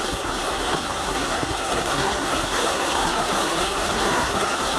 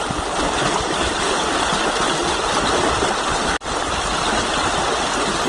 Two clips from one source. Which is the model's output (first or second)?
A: first